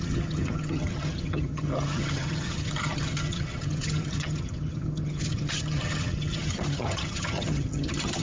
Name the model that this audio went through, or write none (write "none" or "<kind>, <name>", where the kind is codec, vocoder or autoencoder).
vocoder, HiFi-GAN